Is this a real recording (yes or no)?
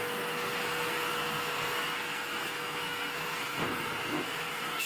no